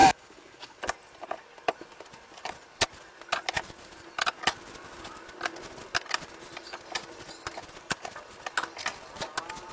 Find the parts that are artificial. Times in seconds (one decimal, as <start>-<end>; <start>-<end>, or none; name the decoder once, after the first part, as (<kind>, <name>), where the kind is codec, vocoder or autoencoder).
0.0-0.8 (codec, DAC)